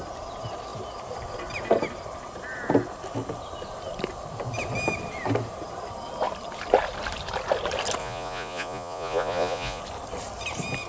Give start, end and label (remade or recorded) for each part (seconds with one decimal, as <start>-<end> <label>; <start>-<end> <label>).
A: 0.0-8.0 recorded; 8.0-9.8 remade; 9.8-10.9 recorded

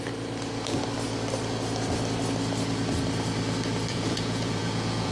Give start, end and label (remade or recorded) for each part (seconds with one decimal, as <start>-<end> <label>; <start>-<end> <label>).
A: 0.0-3.9 recorded; 3.9-5.1 remade

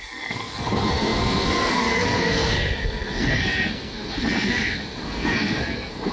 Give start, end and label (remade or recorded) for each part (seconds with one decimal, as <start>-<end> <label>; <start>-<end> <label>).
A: 0.0-6.1 remade

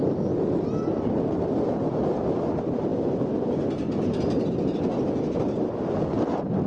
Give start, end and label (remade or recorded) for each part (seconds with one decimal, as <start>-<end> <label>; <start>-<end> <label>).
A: 0.0-6.7 recorded

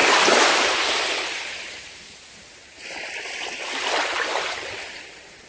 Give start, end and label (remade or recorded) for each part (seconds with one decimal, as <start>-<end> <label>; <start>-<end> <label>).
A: 0.0-5.5 remade

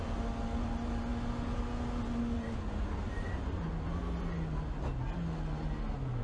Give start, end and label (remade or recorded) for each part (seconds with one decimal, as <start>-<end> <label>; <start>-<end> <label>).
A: 0.0-6.2 recorded

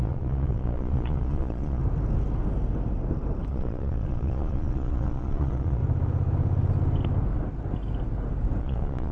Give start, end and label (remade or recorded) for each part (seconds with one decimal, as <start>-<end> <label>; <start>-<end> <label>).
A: 0.0-1.8 remade; 1.8-3.5 recorded; 3.5-5.8 remade; 5.8-8.6 recorded; 8.6-9.1 remade

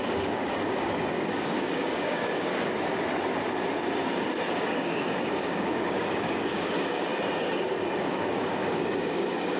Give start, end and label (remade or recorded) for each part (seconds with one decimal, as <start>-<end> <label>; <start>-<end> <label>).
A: 0.0-2.5 remade; 2.5-4.6 recorded; 4.6-7.1 remade; 7.1-8.0 recorded; 8.0-9.6 remade